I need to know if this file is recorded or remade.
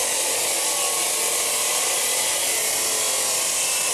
recorded